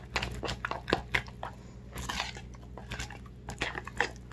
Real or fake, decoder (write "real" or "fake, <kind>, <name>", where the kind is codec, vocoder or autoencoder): real